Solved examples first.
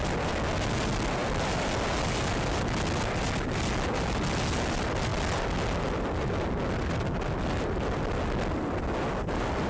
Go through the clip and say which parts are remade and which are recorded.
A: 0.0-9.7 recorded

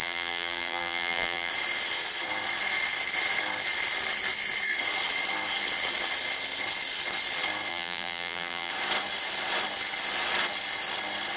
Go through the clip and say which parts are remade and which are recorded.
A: 0.0-1.5 remade; 1.5-7.7 recorded; 7.7-8.7 remade; 8.7-11.4 recorded

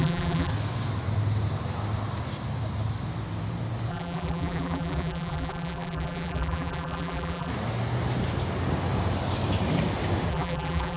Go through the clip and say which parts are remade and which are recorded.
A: 0.0-0.5 remade; 0.5-3.9 recorded; 3.9-7.5 remade; 7.5-10.3 recorded; 10.3-11.0 remade

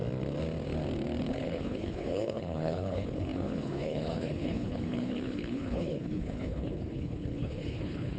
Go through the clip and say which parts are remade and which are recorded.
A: 0.0-1.2 recorded; 1.2-8.2 remade

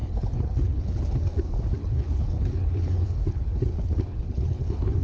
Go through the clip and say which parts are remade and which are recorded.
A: 0.0-1.1 remade; 1.1-1.8 recorded; 1.8-5.0 remade

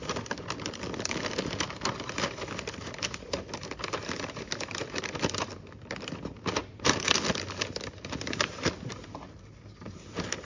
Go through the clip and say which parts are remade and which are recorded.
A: 0.0-6.6 recorded; 6.6-7.2 remade; 7.2-10.4 recorded

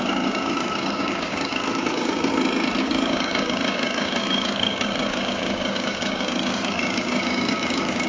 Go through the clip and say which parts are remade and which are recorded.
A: 0.0-2.3 remade; 2.3-2.8 recorded; 2.8-8.1 remade